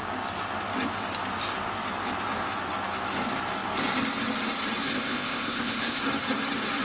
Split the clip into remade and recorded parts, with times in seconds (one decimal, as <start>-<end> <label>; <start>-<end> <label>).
0.0-4.9 recorded; 4.9-6.0 remade; 6.0-6.8 recorded